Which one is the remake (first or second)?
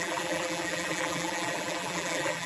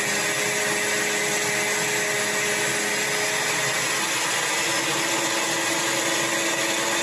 first